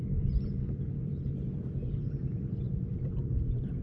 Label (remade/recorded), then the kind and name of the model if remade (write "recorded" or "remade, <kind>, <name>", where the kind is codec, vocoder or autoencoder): remade, vocoder, BigVGAN v2